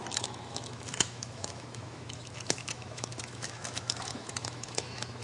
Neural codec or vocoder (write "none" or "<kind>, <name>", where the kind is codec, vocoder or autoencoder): autoencoder, DAC-VAE